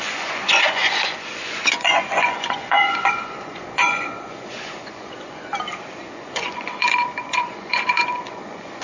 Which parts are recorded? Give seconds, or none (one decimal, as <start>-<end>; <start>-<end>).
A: 5.5-6.0